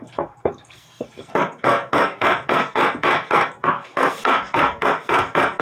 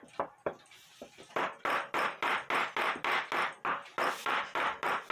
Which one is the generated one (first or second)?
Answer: first